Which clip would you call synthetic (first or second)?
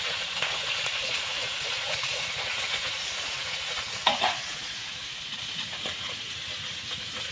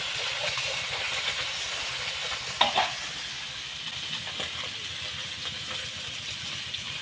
first